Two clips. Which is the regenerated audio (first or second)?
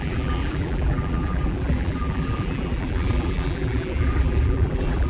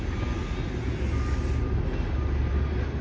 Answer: first